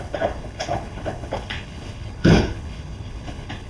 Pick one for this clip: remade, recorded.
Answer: remade